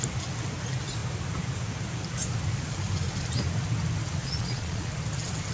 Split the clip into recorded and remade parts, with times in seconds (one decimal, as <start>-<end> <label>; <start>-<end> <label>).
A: 0.0-4.2 recorded; 4.2-4.9 remade; 4.9-5.5 recorded